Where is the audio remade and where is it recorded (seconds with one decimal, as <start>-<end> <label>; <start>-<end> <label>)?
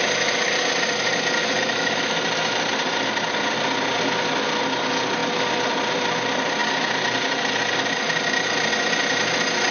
0.0-1.4 recorded; 1.4-2.2 remade; 2.2-9.7 recorded